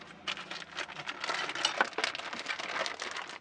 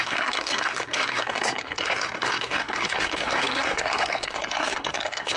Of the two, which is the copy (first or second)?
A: second